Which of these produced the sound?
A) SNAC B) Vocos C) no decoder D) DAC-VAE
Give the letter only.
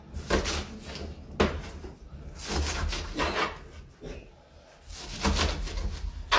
C